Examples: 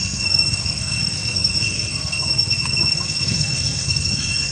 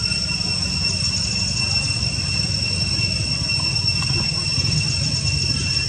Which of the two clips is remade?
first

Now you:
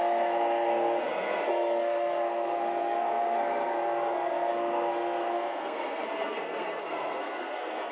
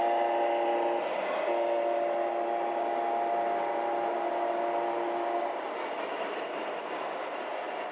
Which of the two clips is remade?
first